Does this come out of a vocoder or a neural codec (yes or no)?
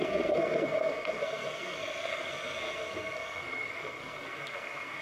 yes